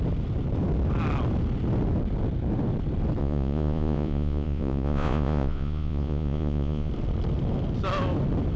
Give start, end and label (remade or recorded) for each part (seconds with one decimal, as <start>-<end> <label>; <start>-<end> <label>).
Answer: 0.0-3.2 recorded; 3.2-6.9 remade; 6.9-8.6 recorded